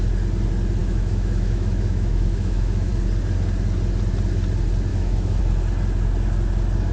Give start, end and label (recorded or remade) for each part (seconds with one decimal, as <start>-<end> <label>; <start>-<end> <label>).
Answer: 0.0-0.8 recorded; 0.8-2.9 remade; 2.9-4.9 recorded; 4.9-5.4 remade; 5.4-6.9 recorded